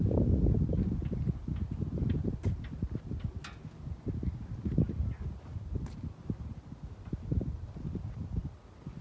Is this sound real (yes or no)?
yes